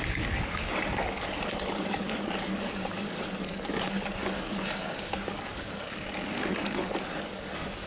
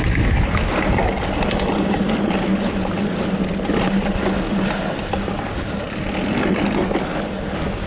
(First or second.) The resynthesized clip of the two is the first